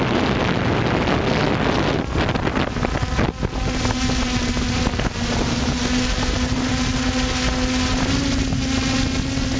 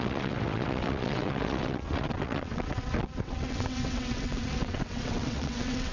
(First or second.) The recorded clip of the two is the first